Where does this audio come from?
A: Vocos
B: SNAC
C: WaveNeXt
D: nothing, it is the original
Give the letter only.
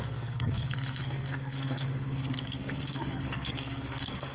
B